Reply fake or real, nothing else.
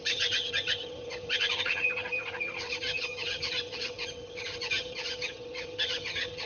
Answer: fake